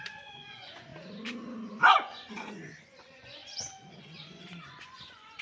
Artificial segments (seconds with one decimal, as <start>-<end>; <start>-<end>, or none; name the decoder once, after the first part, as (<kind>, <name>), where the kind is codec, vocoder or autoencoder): 0.0-0.9 (vocoder, Vocos); 1.7-5.4